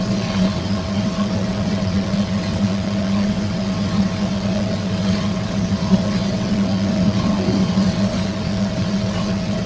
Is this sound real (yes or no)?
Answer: no